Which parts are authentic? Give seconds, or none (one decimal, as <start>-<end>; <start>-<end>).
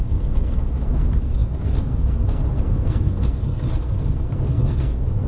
none